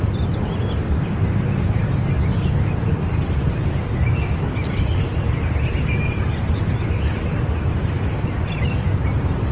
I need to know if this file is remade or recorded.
recorded